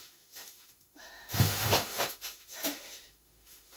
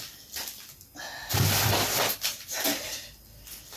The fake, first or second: first